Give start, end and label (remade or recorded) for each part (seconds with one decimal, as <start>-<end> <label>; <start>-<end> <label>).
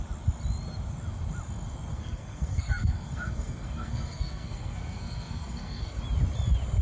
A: 0.0-1.9 recorded; 1.9-6.0 remade; 6.0-6.8 recorded